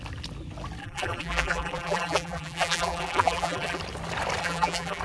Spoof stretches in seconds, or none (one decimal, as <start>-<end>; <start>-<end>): 0.8-3.8; 4.4-5.0